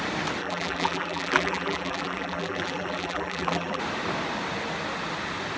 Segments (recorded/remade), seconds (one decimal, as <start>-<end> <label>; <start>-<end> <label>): 0.0-0.4 recorded; 0.4-3.8 remade; 3.8-5.6 recorded